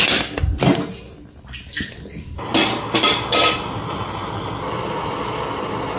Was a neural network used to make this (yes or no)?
no